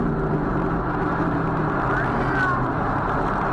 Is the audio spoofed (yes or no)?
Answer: no